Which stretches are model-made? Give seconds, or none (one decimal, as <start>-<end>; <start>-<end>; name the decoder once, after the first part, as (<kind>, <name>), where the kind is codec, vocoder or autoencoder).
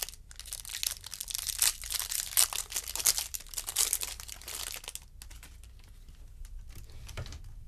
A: none